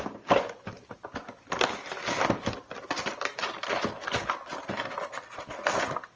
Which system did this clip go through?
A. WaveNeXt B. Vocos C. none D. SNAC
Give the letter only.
C